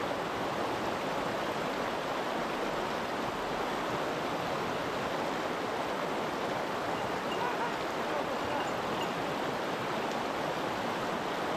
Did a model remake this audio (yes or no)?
no